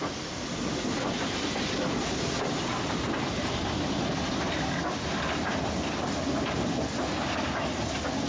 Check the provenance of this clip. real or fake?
real